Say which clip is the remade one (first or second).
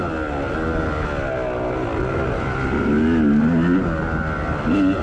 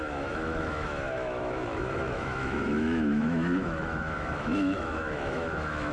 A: second